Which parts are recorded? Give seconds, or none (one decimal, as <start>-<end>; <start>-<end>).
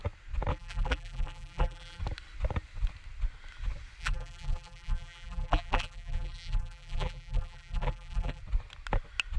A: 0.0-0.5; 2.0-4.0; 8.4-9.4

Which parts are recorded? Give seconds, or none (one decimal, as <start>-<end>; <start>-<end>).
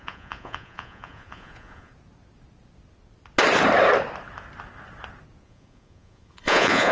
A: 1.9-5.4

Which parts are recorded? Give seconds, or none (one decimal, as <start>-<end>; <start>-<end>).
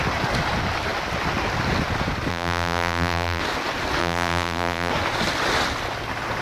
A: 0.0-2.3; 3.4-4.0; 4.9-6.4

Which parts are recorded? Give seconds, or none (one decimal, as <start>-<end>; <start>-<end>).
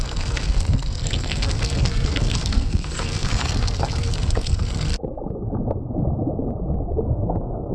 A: 4.9-7.1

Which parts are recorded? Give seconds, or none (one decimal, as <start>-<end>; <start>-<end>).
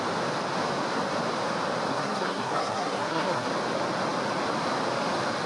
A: 0.0-1.9; 3.5-5.5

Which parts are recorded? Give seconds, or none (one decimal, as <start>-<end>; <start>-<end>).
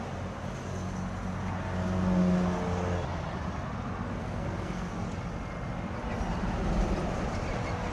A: 0.0-4.2; 4.9-7.9